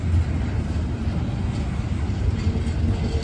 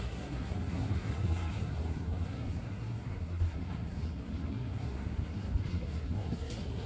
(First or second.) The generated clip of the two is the second